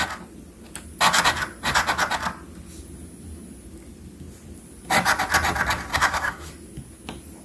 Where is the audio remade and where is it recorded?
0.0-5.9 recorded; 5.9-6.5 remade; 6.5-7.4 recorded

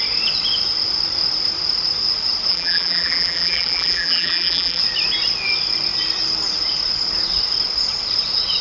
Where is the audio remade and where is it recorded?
0.0-2.5 recorded; 2.5-4.8 remade; 4.8-8.6 recorded

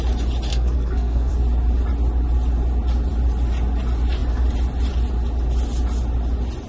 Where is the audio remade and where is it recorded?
0.0-0.5 recorded; 0.5-1.3 remade; 1.3-6.7 recorded

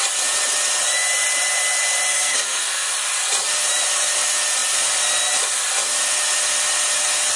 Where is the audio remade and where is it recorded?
0.0-2.1 recorded; 2.1-2.9 remade; 2.9-7.4 recorded